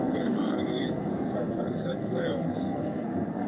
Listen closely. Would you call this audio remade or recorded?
remade